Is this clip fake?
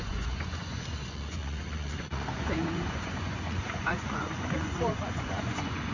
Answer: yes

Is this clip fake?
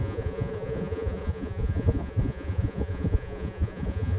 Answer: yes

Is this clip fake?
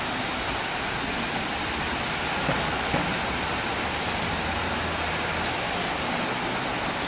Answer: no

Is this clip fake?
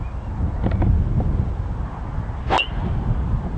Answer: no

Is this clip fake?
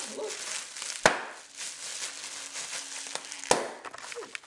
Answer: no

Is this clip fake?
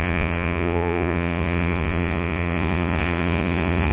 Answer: yes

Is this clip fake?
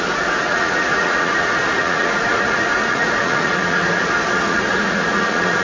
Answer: yes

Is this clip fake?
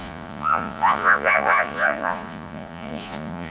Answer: yes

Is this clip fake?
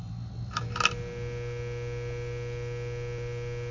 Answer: no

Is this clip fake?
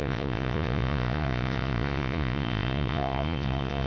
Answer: yes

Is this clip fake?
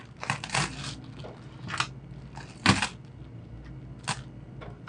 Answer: no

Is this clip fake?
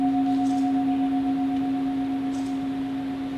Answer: no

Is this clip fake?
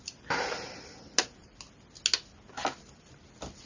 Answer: no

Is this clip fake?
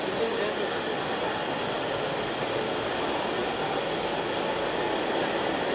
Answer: no